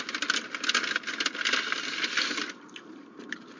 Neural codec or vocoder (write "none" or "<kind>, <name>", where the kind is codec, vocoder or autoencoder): none